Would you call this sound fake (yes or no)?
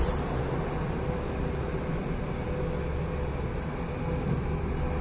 no